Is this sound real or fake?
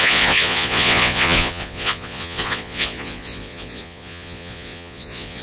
fake